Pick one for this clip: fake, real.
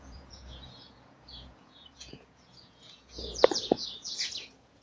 fake